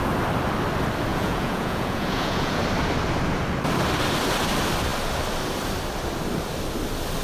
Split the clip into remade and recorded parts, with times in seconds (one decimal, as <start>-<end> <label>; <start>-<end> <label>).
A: 0.0-1.1 recorded; 1.1-2.6 remade; 2.6-7.2 recorded